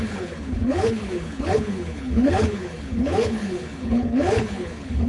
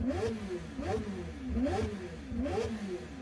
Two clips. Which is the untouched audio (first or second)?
second